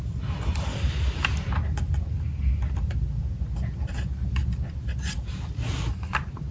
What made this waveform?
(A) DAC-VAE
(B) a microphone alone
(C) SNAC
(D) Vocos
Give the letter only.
B